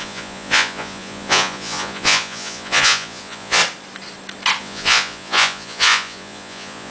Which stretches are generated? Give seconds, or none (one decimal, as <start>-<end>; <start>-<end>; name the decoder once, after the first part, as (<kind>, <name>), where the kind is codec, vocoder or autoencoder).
0.0-3.6 (vocoder, Vocos); 4.6-6.9